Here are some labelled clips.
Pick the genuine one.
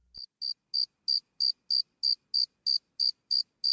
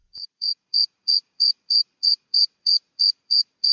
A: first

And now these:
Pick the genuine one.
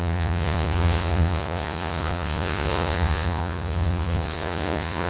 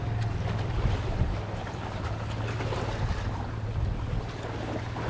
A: second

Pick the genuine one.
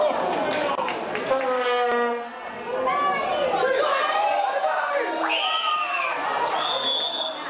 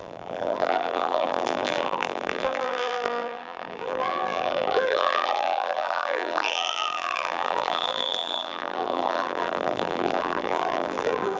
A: first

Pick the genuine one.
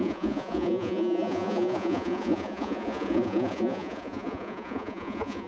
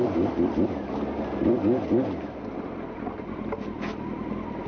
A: second